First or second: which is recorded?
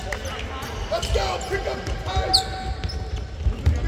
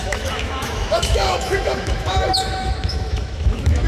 first